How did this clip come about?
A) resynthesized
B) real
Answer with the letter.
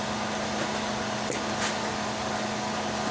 B